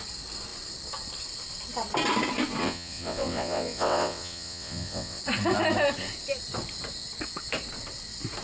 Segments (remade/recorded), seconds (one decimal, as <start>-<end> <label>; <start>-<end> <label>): 0.0-2.6 recorded; 2.6-5.2 remade; 5.2-8.4 recorded

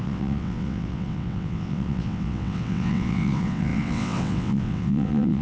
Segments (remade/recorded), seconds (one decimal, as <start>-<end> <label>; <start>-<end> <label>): 0.0-5.4 remade

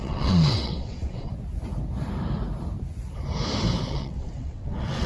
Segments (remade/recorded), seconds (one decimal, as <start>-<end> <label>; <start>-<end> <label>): 0.0-1.3 remade; 1.3-3.9 recorded; 3.9-5.1 remade

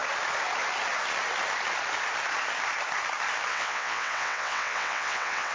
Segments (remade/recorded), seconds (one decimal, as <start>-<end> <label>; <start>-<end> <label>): 0.0-3.5 recorded; 3.5-5.5 remade

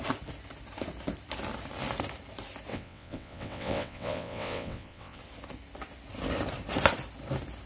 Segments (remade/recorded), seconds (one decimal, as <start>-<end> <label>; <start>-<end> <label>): 0.0-2.7 recorded; 2.7-5.2 remade; 5.2-7.7 recorded